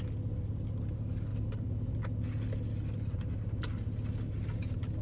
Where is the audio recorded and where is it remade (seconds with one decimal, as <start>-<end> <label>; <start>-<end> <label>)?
0.0-5.0 recorded